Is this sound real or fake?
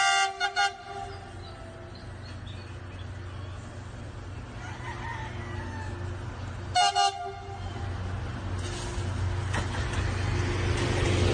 real